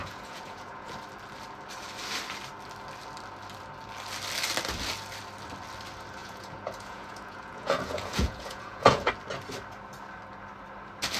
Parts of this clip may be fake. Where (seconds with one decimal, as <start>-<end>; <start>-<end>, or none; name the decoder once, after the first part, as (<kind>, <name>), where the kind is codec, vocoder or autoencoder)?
0.0-0.9 (vocoder, Vocos); 6.2-9.1